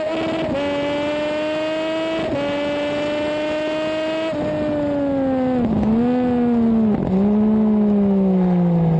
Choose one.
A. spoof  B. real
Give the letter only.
B